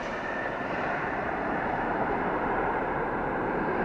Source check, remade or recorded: remade